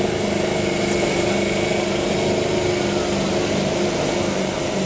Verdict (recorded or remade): recorded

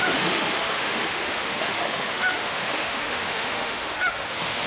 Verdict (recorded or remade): remade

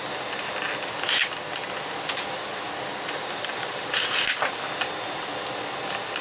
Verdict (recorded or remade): recorded